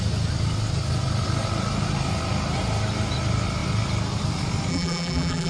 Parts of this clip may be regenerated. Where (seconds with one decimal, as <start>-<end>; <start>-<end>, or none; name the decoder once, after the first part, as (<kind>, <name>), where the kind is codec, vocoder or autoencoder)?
4.7-5.5 (vocoder, BigVGAN v2)